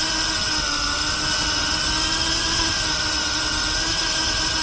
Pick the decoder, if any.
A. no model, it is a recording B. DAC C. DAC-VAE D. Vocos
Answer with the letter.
A